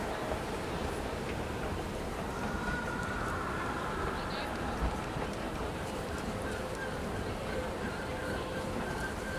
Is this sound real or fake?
fake